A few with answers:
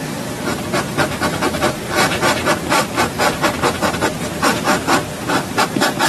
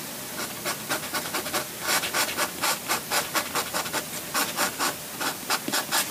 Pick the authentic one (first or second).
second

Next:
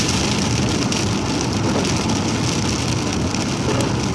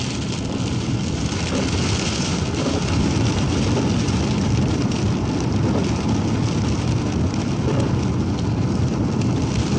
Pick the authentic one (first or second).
first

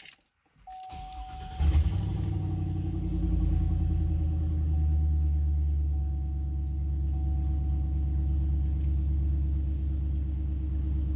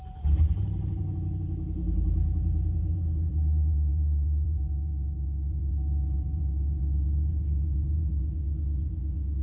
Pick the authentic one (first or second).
first